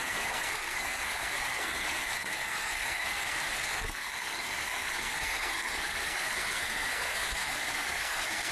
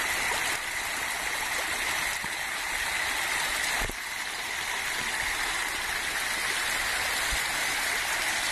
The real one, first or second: second